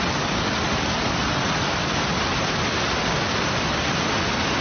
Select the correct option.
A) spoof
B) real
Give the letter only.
B